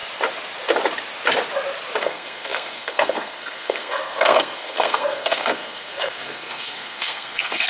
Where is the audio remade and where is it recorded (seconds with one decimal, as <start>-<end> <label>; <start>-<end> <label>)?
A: 0.0-2.0 recorded; 2.0-7.7 remade